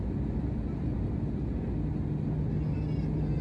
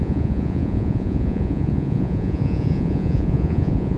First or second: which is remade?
second